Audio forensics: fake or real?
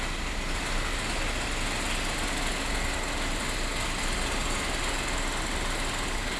real